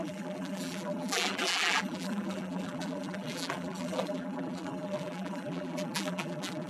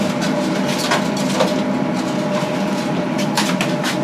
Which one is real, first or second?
second